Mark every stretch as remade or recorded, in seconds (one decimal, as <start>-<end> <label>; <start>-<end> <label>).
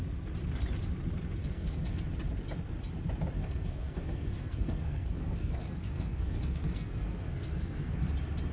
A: 0.0-1.4 recorded; 1.4-2.0 remade; 2.0-3.4 recorded; 3.4-8.0 remade; 8.0-8.5 recorded